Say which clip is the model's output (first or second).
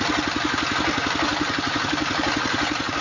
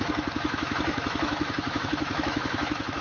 second